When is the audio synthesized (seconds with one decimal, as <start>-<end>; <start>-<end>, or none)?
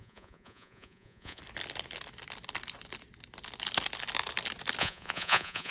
0.0-1.4; 4.8-5.7